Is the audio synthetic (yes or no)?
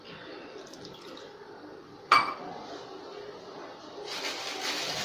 no